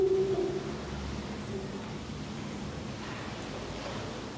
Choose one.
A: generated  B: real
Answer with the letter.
B